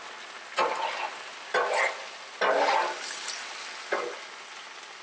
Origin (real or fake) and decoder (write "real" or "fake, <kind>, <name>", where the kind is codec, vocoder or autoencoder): real